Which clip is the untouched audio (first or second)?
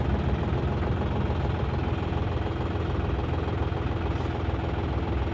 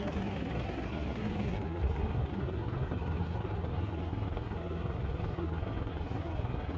first